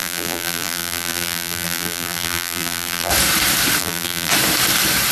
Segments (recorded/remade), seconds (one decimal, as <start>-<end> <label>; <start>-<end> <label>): 0.0-3.1 remade; 3.1-3.8 recorded; 3.8-4.3 remade; 4.3-5.1 recorded